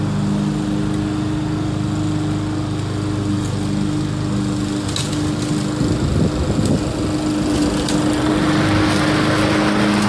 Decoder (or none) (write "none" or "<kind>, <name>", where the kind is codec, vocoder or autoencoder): none